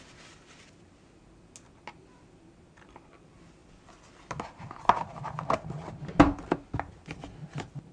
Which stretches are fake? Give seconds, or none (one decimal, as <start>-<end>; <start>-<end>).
none